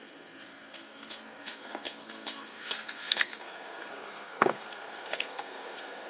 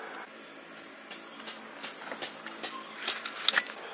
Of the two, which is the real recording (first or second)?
second